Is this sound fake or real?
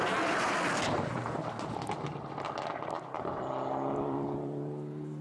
real